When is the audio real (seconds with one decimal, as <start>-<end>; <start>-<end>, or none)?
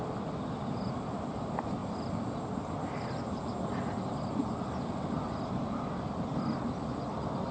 0.0-7.5